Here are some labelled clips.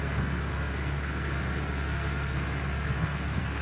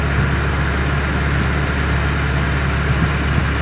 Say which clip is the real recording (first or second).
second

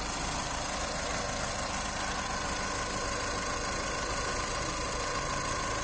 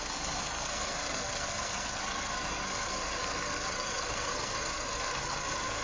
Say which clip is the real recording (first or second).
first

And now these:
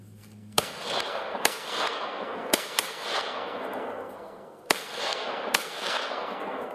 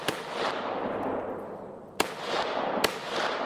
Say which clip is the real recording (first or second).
second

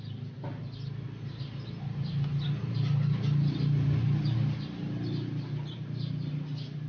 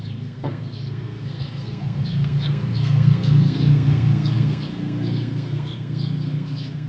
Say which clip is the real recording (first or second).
first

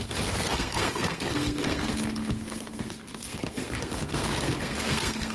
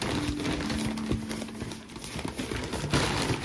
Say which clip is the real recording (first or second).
second